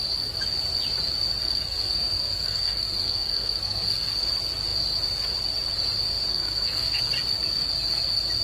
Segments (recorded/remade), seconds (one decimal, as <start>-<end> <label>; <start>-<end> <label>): 0.0-1.4 recorded; 1.4-4.3 remade; 4.3-6.3 recorded; 6.3-7.1 remade; 7.1-8.4 recorded